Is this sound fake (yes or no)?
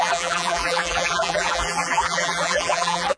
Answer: yes